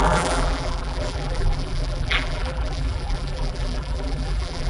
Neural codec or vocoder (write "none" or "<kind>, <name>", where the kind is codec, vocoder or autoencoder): vocoder, BigVGAN v2